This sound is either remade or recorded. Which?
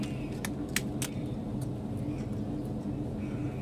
recorded